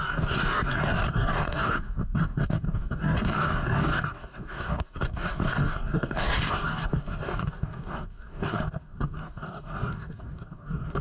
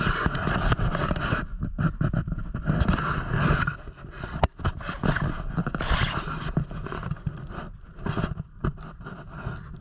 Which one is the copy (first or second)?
first